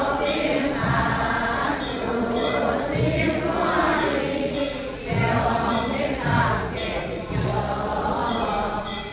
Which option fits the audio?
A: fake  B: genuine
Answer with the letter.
A